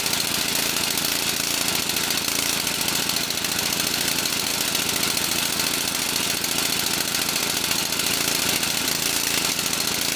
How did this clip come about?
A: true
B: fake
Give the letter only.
A